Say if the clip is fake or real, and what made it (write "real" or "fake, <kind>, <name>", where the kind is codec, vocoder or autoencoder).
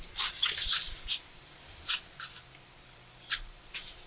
fake, vocoder, BigVGAN v2